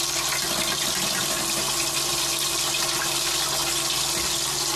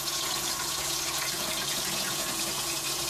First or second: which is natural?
first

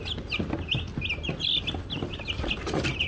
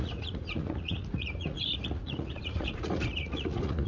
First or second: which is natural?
first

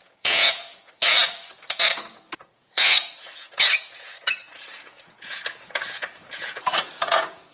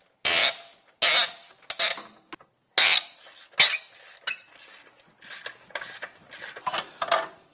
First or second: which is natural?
second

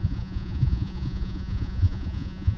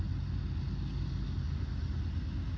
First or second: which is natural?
second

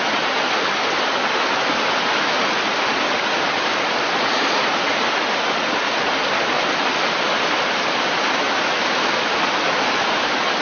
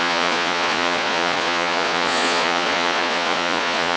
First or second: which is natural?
first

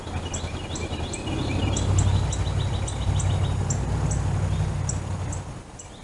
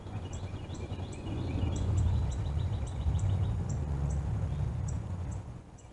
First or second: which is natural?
first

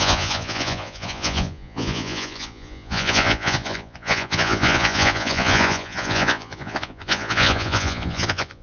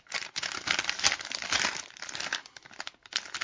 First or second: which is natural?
second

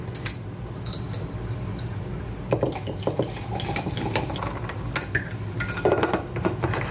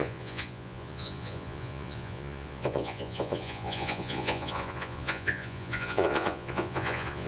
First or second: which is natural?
first